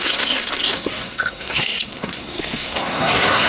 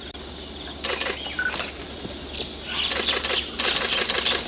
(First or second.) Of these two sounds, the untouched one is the second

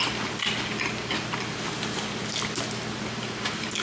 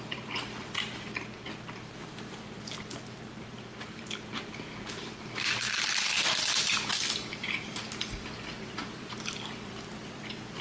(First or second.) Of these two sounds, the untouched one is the first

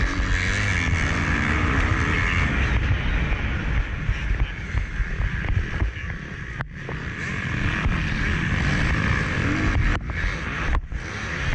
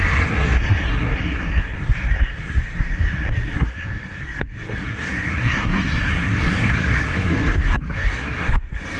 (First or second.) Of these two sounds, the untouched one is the first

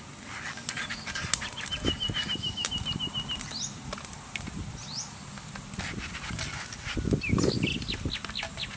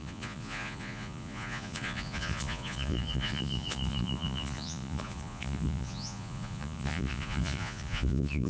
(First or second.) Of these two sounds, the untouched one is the first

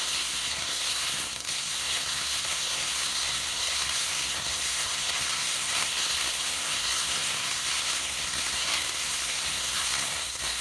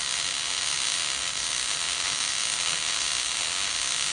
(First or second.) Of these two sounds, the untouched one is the second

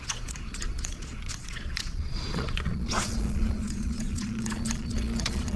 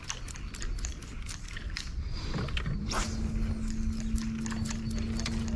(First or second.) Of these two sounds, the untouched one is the second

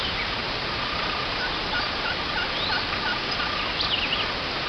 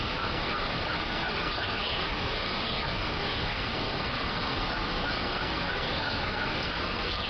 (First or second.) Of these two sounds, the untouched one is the first